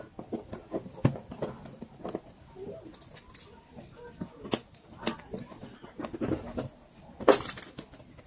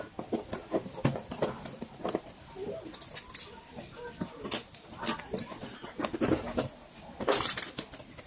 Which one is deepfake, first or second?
second